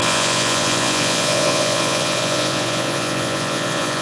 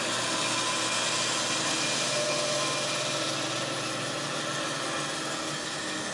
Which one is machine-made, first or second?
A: first